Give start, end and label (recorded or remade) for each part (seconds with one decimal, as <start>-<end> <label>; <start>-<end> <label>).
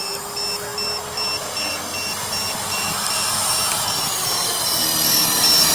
0.0-5.7 recorded